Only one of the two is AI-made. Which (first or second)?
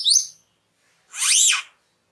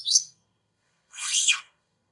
second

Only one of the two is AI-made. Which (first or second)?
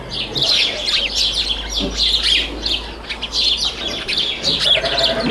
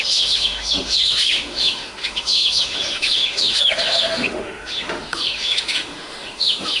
second